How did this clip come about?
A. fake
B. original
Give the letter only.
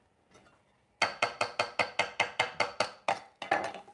B